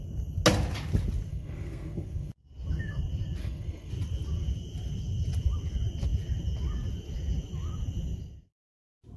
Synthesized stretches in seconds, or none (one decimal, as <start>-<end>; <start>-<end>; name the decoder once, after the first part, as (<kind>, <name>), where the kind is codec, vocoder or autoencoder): 1.3-2.3 (codec, SNAC); 3.4-3.9